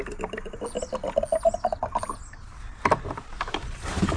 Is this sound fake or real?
real